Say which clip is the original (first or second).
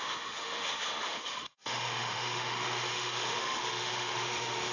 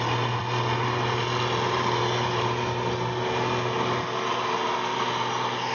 second